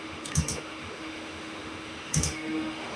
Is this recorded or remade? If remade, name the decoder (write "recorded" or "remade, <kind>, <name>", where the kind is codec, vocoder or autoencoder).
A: remade, autoencoder, DAC-VAE